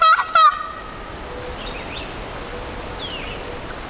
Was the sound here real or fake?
real